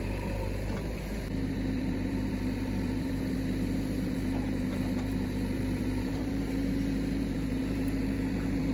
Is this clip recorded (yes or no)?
no